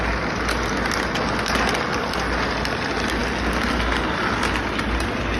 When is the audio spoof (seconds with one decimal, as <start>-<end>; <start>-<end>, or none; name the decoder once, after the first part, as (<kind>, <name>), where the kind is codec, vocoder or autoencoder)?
none

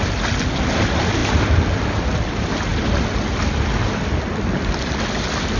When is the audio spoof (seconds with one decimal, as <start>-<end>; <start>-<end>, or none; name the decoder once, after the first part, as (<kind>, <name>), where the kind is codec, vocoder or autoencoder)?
none

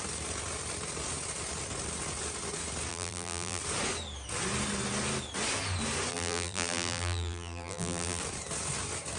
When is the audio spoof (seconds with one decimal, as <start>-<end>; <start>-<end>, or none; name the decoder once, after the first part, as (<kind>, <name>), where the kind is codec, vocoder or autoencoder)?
2.9-3.6 (vocoder, BigVGAN v2); 6.1-8.2

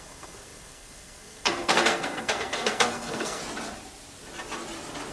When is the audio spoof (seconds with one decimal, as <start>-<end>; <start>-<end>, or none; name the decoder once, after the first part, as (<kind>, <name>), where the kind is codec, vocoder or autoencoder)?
0.0-3.4 (codec, SNAC)